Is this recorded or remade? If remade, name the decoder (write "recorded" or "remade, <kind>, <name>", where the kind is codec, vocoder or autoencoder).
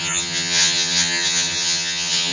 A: remade, vocoder, HiFi-GAN